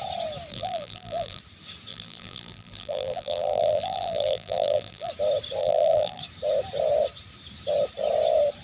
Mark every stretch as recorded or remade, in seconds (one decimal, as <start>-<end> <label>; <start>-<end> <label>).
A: 0.0-0.5 recorded; 0.5-1.4 remade; 1.4-1.9 recorded; 1.9-5.1 remade; 5.1-5.6 recorded; 5.6-6.2 remade; 6.2-8.6 recorded